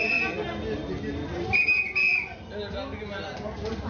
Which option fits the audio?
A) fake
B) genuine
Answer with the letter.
B